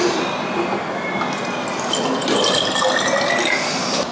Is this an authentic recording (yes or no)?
yes